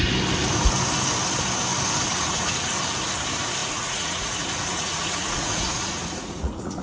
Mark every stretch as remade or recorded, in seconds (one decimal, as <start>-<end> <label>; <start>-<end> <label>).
0.0-2.1 recorded; 2.1-2.7 remade; 2.7-3.6 recorded; 3.6-6.8 remade